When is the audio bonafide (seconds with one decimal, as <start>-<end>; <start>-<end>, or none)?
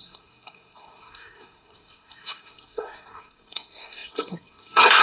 none